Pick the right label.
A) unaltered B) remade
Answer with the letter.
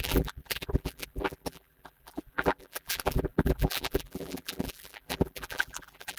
B